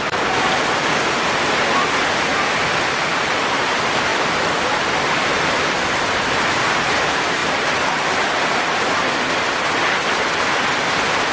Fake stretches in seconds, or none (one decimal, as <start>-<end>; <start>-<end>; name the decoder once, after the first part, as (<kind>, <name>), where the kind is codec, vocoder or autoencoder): 2.3-3.3 (vocoder, BigVGAN v2); 4.1-5.7